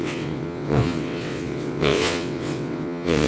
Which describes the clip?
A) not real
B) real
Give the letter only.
A